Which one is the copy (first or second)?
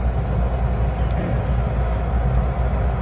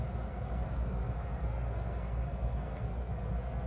second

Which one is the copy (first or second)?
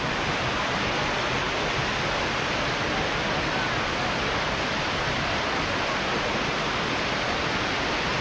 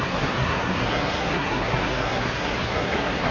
second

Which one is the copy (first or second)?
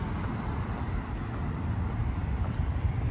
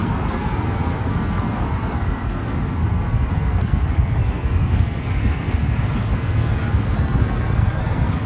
second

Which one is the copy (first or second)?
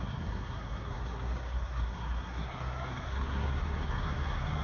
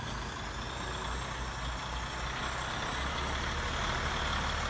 first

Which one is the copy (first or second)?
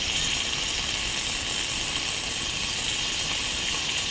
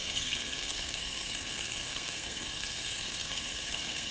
second